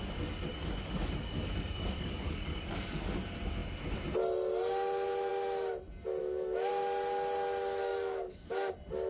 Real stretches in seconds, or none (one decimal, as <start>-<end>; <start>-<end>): 0.0-0.5; 3.2-6.2; 6.7-7.8; 8.7-9.1